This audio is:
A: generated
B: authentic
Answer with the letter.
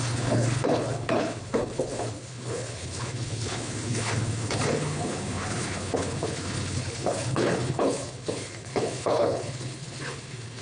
A